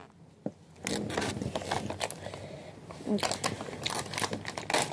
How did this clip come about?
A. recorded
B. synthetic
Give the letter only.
A